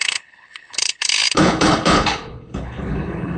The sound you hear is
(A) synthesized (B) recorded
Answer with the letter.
A